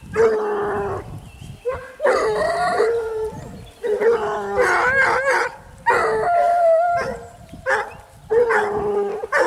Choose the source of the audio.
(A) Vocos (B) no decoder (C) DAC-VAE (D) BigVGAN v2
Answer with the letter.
B